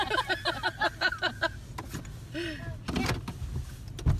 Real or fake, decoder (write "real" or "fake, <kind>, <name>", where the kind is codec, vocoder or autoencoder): real